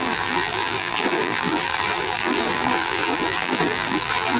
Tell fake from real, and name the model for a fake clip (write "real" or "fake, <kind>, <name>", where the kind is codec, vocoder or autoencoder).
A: fake, vocoder, BigVGAN v2